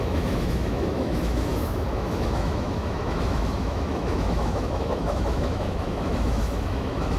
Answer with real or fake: fake